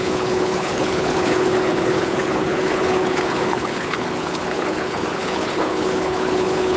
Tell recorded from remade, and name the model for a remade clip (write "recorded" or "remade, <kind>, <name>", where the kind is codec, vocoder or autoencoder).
remade, codec, HILCodec